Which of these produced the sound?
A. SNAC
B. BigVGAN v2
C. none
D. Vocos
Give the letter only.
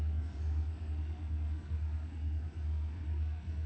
A